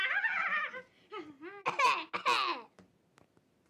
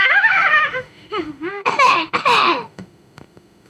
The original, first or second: first